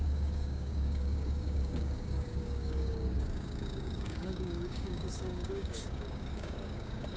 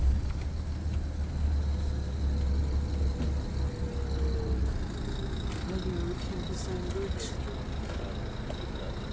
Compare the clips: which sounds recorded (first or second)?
second